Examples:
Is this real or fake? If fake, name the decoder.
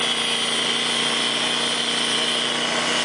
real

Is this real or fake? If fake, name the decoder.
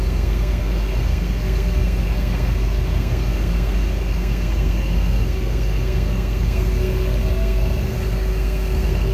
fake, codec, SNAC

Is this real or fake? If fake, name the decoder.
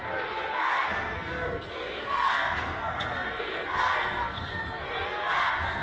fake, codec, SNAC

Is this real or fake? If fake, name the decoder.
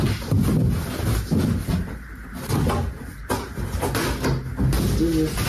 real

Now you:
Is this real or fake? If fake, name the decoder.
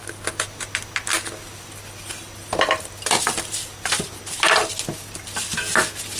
real